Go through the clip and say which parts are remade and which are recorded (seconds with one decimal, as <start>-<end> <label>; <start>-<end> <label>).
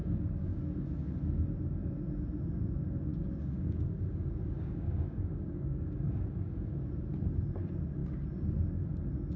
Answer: 0.0-0.6 remade; 0.6-3.1 recorded; 3.1-6.9 remade; 6.9-9.4 recorded